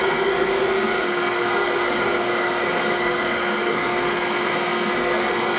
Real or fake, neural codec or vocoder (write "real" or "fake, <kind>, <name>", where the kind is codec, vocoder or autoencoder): fake, codec, SNAC